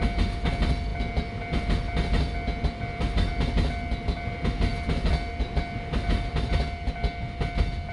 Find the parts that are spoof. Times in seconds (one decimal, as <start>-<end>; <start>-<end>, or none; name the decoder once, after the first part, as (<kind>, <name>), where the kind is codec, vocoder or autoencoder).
none